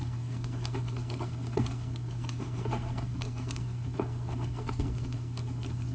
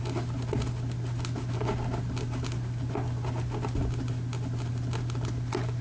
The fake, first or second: first